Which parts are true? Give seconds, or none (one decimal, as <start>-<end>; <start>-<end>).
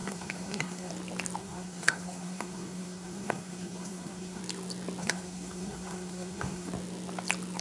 0.9-1.4; 4.4-5.0; 6.7-7.6